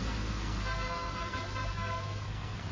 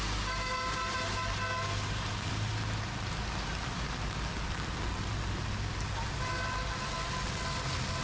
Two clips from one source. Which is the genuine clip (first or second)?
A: second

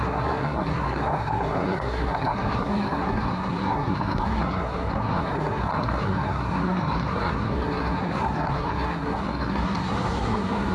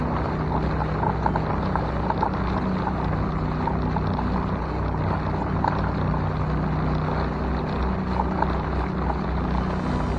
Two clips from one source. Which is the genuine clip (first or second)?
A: second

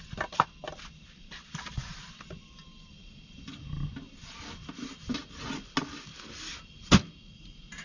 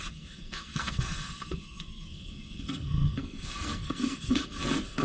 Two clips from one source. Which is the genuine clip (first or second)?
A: first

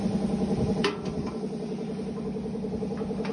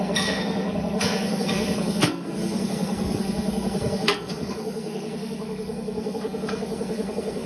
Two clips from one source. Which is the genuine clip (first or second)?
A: first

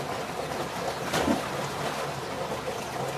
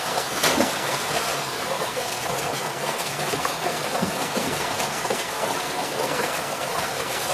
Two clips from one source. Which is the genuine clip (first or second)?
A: first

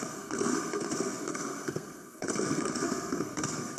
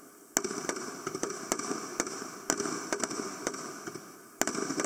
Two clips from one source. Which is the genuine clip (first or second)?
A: second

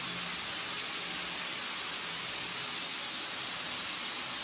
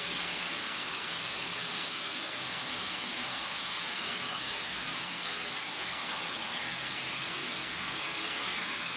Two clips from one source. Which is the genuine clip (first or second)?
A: first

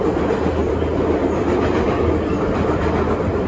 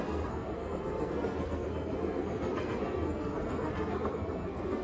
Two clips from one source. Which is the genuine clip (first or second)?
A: first